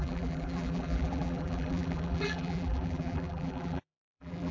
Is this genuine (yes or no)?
no